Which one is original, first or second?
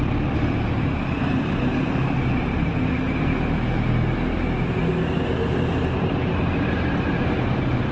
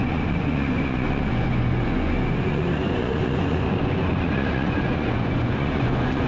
first